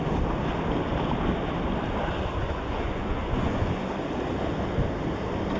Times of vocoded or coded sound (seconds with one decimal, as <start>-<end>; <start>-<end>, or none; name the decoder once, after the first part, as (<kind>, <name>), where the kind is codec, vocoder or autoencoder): 2.4-3.8 (vocoder, Vocos)